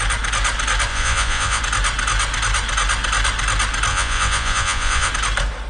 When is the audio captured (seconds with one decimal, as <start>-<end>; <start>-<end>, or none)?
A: 0.0-0.9; 1.6-3.9; 5.1-5.7